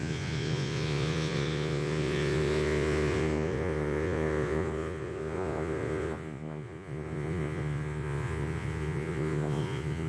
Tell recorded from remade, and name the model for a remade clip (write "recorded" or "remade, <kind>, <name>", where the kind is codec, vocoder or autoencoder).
remade, vocoder, Vocos